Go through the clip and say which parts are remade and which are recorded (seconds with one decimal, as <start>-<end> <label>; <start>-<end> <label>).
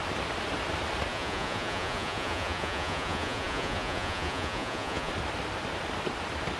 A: 0.0-1.1 recorded; 1.1-5.1 remade; 5.1-6.6 recorded